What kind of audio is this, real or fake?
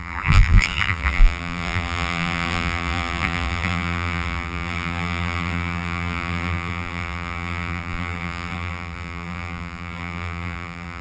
fake